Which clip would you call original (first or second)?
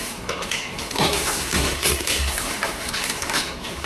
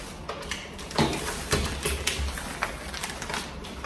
second